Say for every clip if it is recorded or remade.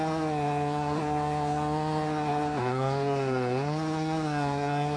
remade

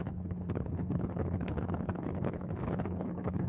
remade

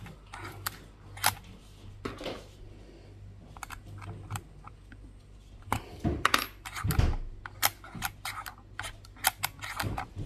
recorded